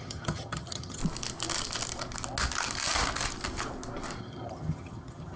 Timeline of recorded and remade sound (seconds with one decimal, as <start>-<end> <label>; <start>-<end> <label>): 0.0-1.0 remade; 1.0-4.2 recorded; 4.2-5.4 remade